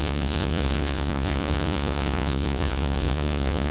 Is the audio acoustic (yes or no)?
no